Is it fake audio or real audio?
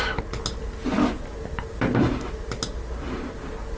real